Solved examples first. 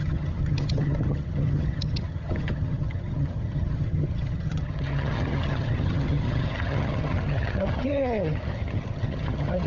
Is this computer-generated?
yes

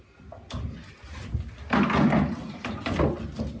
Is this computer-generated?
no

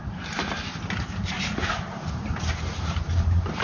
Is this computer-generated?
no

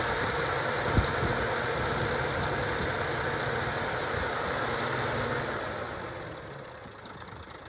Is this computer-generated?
no